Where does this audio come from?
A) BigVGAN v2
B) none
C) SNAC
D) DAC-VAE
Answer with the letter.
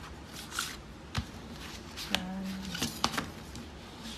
B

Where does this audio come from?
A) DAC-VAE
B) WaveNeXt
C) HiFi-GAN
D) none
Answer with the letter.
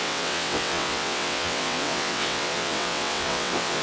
B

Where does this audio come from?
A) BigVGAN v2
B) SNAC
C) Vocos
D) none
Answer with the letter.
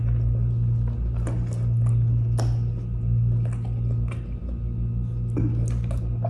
D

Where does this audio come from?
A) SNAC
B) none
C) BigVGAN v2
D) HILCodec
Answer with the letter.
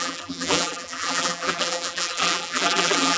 C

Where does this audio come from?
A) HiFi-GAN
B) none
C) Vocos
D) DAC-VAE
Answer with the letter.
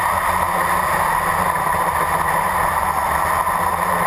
B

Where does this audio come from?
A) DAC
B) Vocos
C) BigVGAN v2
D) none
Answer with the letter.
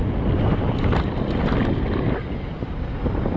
D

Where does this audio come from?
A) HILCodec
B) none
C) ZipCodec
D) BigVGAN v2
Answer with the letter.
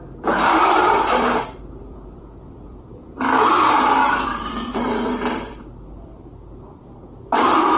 D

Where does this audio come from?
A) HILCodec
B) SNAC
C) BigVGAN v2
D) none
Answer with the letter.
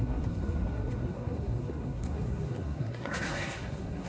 B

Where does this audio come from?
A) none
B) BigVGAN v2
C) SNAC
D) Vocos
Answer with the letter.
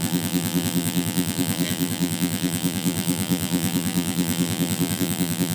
B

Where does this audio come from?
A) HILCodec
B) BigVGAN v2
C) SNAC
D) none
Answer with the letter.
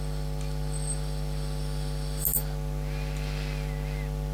D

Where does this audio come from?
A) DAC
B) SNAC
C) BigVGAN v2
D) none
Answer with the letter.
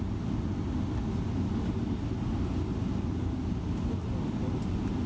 D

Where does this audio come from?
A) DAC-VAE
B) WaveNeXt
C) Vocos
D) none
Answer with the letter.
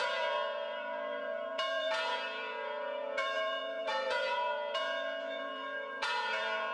C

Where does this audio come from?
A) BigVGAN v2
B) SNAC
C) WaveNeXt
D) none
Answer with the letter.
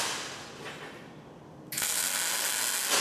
D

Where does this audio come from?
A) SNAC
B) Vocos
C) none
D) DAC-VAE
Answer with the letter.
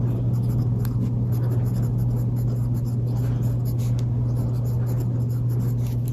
C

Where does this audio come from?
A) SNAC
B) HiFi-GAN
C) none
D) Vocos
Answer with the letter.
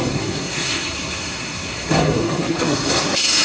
A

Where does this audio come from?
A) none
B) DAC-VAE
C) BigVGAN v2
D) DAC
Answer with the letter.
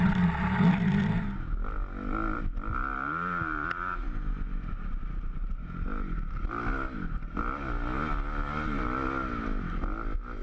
A